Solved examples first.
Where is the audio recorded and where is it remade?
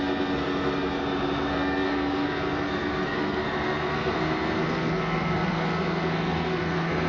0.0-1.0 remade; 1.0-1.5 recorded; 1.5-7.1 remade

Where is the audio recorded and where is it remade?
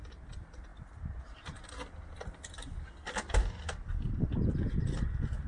0.0-5.5 recorded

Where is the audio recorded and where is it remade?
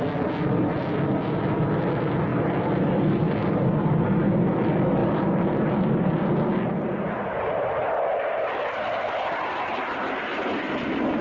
0.0-11.2 recorded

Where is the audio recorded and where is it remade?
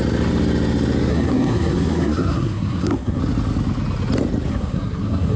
0.0-1.1 recorded; 1.1-3.2 remade; 3.2-4.5 recorded; 4.5-5.4 remade